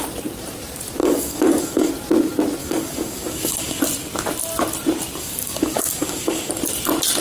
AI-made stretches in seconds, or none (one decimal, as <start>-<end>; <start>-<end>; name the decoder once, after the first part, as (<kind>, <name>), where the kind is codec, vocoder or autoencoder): 1.0-1.9 (codec, DAC); 2.6-3.8; 5.2-6.5